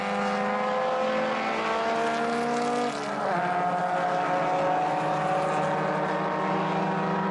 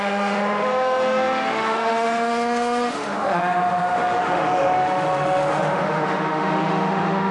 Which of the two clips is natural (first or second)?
first